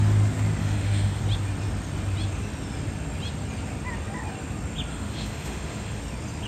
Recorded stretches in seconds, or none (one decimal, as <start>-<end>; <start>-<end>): 0.0-0.6; 1.2-4.9; 6.0-6.5